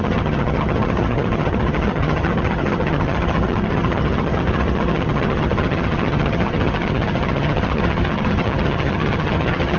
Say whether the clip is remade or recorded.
remade